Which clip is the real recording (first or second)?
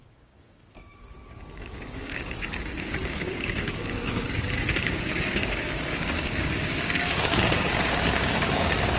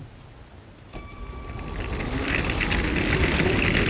second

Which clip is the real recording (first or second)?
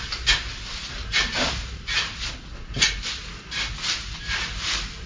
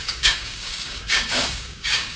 first